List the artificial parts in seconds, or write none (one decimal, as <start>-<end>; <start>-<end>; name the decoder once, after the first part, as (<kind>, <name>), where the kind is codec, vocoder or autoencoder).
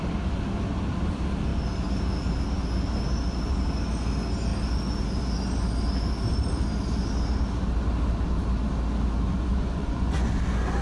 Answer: 9.3-10.3 (vocoder, Vocos)